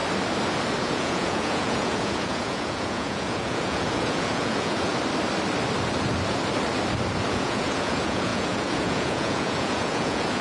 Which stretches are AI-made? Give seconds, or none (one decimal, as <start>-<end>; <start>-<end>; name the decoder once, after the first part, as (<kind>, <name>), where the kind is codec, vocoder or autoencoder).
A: 0.8-4.9 (vocoder, Vocos); 7.3-10.4